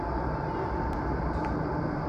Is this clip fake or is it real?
real